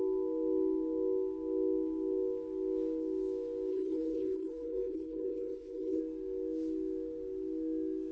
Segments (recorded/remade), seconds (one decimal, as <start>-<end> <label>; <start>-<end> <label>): 0.0-3.7 recorded; 3.7-6.0 remade; 6.0-8.1 recorded